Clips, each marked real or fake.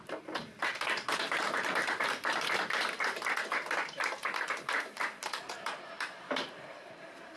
fake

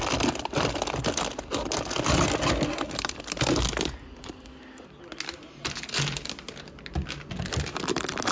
real